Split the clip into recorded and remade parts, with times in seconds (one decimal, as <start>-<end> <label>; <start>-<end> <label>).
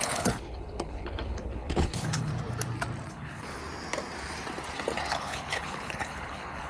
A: 0.0-2.3 remade; 2.3-3.1 recorded; 3.1-3.6 remade; 3.6-5.1 recorded; 5.1-6.7 remade